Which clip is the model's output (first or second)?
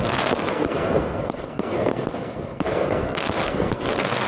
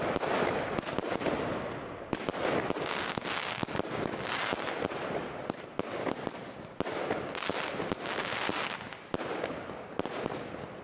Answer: first